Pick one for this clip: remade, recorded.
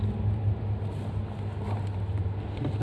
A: recorded